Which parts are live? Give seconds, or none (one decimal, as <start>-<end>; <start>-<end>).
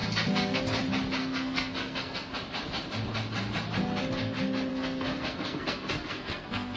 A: 0.6-1.2; 2.3-4.7